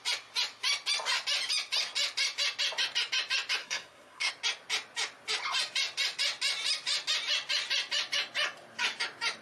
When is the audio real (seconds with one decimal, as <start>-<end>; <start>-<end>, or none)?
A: 0.0-3.6; 4.3-9.4